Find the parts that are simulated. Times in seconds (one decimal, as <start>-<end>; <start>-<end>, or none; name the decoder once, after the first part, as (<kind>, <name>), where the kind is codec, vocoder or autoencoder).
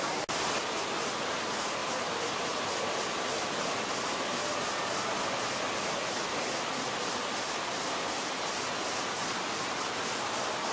none